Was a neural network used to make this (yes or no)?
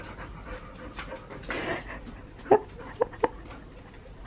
no